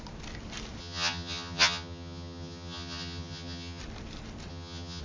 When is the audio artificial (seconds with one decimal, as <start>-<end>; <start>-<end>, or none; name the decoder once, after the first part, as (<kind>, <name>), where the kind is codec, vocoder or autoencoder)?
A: 0.8-3.8 (vocoder, HiFi-GAN); 4.5-5.0